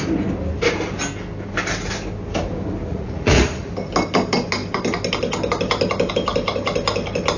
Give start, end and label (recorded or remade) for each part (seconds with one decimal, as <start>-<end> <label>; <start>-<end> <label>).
0.0-2.9 recorded; 2.9-3.7 remade; 3.7-7.4 recorded